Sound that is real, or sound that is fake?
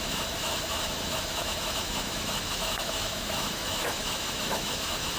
fake